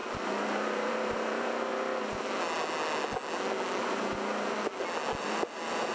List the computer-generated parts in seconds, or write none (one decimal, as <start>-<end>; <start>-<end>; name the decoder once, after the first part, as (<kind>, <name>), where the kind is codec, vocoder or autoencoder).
0.0-1.7 (vocoder, BigVGAN v2); 5.2-5.9